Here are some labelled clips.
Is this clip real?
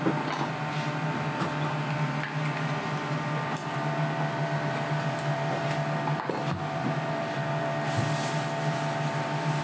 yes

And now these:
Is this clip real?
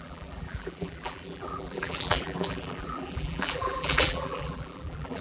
no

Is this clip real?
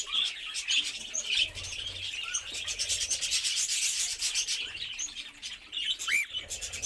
yes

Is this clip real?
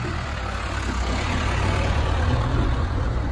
no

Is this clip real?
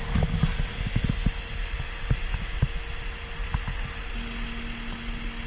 yes